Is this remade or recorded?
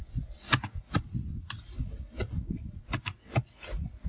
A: recorded